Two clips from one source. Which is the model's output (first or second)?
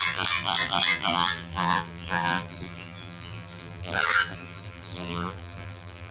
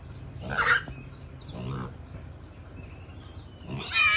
first